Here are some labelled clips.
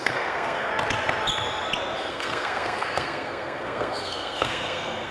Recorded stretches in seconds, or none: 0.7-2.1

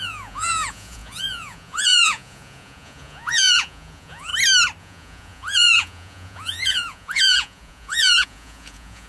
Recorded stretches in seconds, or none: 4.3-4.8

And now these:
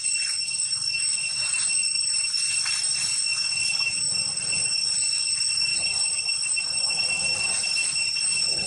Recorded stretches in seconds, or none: 0.0-1.2; 2.8-5.7